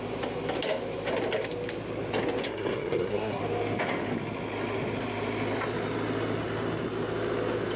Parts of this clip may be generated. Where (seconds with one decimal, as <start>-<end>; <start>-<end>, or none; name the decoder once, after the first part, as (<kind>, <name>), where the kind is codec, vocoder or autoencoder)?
2.4-3.4 (codec, SNAC)